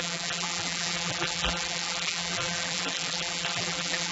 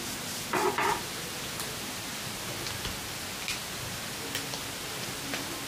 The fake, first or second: first